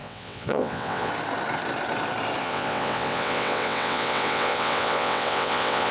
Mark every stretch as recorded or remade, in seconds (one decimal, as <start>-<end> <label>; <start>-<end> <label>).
0.0-1.1 remade; 1.1-2.4 recorded; 2.4-5.9 remade